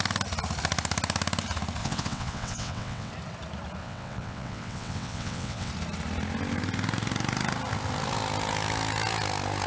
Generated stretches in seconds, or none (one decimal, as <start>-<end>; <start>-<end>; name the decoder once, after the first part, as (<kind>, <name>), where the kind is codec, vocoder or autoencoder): 1.8-3.1 (vocoder, WaveNeXt); 3.8-5.7